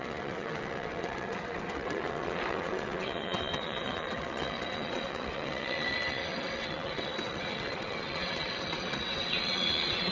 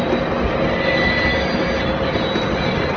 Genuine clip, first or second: second